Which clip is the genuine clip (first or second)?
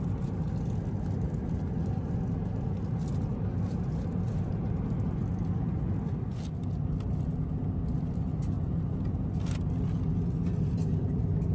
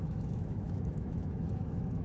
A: first